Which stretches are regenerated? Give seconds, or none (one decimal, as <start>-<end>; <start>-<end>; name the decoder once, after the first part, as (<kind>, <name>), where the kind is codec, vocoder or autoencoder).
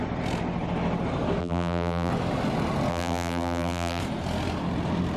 1.4-2.1 (vocoder, BigVGAN v2); 2.9-4.0